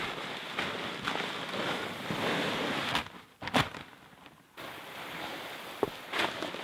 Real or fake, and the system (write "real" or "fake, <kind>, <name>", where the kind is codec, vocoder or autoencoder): real